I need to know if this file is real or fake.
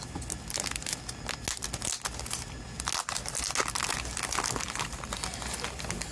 real